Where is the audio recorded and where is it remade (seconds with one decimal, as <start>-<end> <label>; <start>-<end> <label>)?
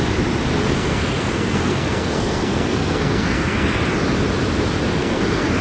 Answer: 0.0-0.6 recorded; 0.6-3.8 remade; 3.8-5.0 recorded; 5.0-5.6 remade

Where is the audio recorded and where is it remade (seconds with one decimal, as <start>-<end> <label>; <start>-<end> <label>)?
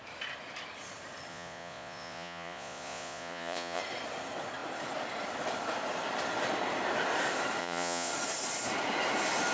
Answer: 0.0-1.3 recorded; 1.3-3.8 remade; 3.8-7.6 recorded; 7.6-8.1 remade; 8.1-9.5 recorded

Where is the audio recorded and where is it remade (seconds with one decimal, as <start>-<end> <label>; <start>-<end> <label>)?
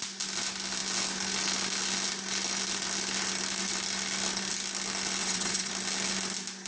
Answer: 0.0-5.2 recorded; 5.2-5.7 remade; 5.7-6.7 recorded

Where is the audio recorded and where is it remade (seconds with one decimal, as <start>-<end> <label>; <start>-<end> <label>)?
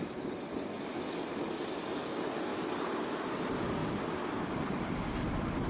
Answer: 0.0-5.7 recorded